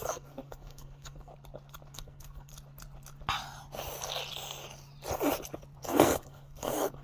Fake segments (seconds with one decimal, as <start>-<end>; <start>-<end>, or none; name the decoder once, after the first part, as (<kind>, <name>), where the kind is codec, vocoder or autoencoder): 0.0-1.3 (codec, SNAC); 1.9-2.5; 5.8-7.0